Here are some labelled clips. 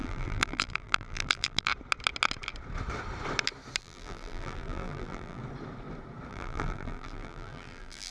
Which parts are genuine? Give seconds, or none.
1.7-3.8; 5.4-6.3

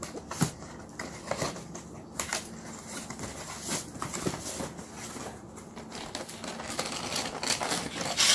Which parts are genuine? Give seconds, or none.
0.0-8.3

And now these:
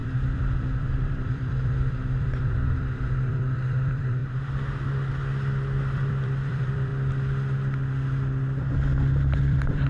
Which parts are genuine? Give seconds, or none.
4.2-5.8; 6.9-9.4

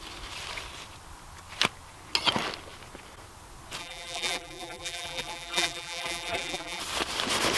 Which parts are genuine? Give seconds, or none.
0.0-3.8; 6.8-7.6

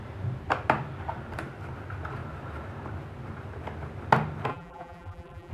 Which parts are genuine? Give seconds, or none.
0.0-4.5

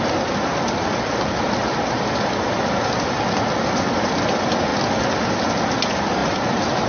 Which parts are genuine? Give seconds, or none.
0.0-6.2

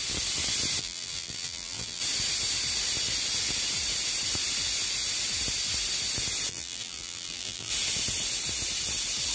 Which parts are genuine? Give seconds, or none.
0.0-0.8; 2.0-6.5; 7.7-9.3

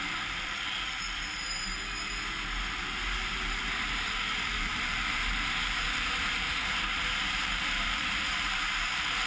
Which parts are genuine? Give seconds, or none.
1.7-2.8